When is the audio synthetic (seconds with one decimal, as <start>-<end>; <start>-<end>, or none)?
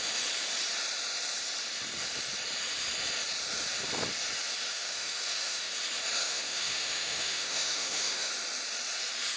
4.7-5.7; 6.2-8.3